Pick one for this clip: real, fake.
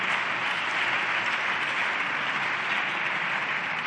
real